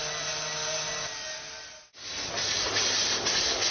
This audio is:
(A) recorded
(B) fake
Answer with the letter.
A